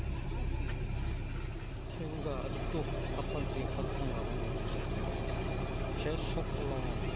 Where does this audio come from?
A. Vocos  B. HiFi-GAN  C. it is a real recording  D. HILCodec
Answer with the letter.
C